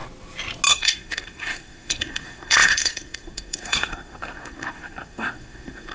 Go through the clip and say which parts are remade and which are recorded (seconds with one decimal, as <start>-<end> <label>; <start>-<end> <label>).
0.0-0.7 recorded; 0.7-5.9 remade